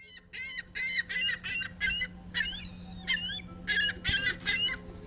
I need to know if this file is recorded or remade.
recorded